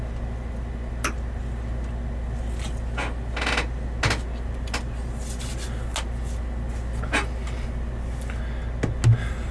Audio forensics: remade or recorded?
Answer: recorded